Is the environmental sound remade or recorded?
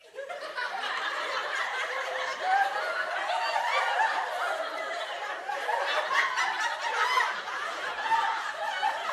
remade